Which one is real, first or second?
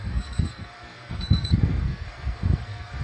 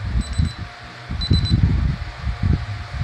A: second